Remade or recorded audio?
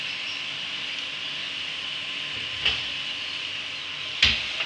recorded